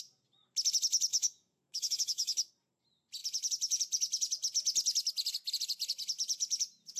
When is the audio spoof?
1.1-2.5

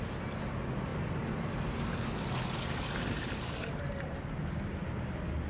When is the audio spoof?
none

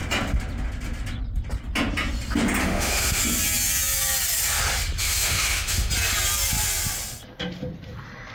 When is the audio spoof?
2.6-3.2; 5.0-5.9